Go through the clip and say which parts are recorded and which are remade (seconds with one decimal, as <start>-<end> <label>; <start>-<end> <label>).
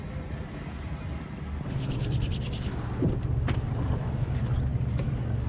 0.0-5.5 recorded